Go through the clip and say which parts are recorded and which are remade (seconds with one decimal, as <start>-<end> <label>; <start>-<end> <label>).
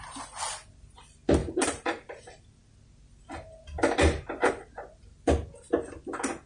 0.0-1.4 recorded; 1.4-2.2 remade; 2.2-6.5 recorded